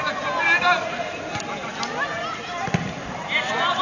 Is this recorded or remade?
recorded